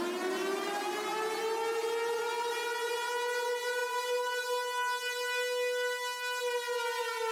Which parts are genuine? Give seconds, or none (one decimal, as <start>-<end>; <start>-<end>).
0.0-0.4; 1.4-1.8; 2.5-7.3